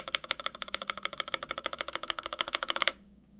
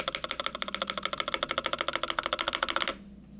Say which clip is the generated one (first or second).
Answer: first